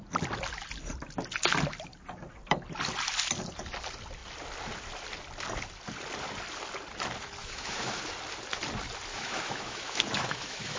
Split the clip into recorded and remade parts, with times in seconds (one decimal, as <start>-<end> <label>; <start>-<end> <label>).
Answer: 0.0-7.4 recorded; 7.4-8.0 remade; 8.0-9.1 recorded; 9.1-10.8 remade